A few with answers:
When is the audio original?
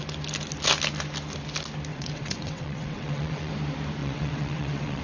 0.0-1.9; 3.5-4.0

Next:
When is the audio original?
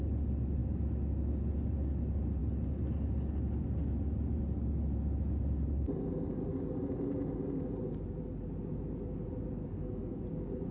0.0-9.6; 10.2-10.7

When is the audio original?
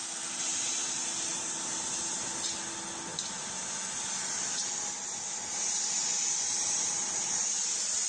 0.0-1.3; 2.6-7.1; 7.6-8.1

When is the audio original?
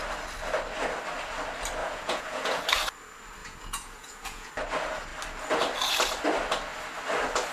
0.0-1.8; 2.6-3.4; 4.5-7.5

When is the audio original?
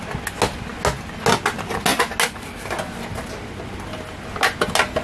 0.0-5.0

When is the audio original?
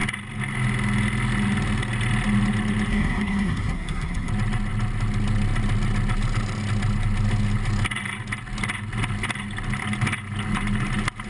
0.0-2.9; 4.3-11.3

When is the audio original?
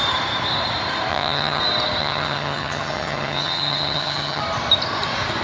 0.0-1.1; 1.6-2.0; 4.4-5.4